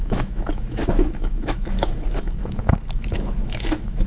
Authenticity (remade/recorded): remade